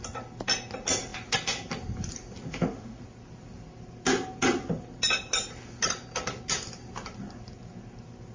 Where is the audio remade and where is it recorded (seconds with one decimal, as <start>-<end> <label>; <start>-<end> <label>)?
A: 0.0-2.5 recorded; 2.5-3.0 remade; 3.0-8.3 recorded